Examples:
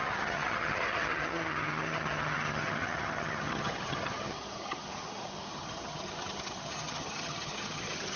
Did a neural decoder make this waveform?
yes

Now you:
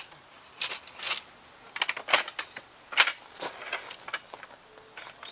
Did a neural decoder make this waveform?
no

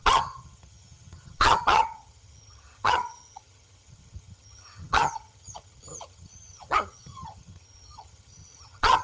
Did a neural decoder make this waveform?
yes